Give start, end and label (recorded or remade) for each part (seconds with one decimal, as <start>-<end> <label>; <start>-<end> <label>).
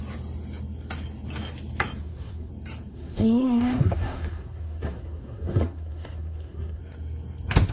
0.0-2.0 recorded; 2.0-2.5 remade; 2.5-2.9 recorded; 2.9-6.8 remade; 6.8-7.7 recorded